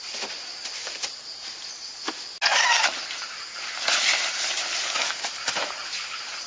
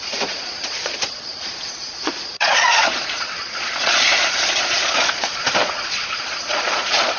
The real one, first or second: first